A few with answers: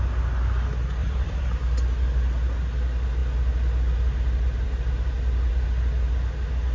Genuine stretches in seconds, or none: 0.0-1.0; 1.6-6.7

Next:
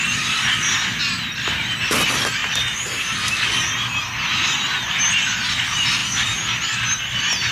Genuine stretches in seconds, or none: 0.0-7.5

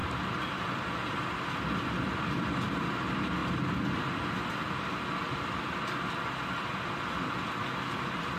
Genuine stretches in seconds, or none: 0.0-8.4

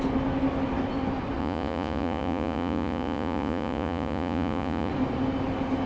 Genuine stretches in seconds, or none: 0.0-1.4; 4.9-5.9

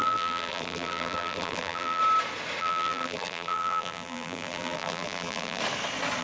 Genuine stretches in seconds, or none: 2.0-2.6; 5.6-6.2